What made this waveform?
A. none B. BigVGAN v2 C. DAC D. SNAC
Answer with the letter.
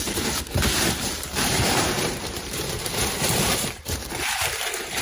B